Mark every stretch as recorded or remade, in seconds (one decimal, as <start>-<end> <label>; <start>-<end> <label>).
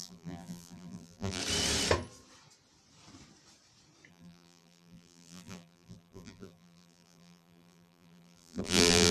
0.0-1.4 remade; 1.4-4.1 recorded; 4.1-9.1 remade